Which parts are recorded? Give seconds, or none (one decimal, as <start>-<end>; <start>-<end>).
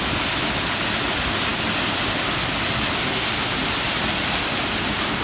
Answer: 0.0-5.2